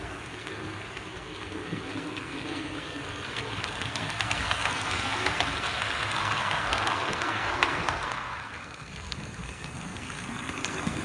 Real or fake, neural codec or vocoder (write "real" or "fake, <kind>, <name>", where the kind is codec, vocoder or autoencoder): fake, codec, SNAC